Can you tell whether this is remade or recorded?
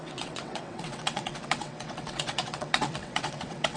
remade